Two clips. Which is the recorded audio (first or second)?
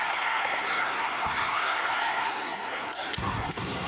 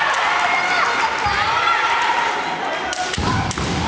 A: second